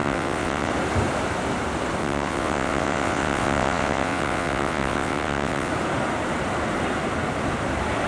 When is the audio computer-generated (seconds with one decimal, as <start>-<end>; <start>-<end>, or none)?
0.0-0.7; 2.0-5.7